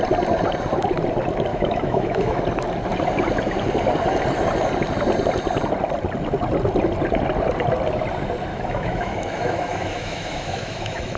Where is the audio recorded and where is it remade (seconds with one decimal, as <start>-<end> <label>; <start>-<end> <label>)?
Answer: 0.0-1.5 recorded; 1.5-2.4 remade; 2.4-8.5 recorded; 8.5-11.2 remade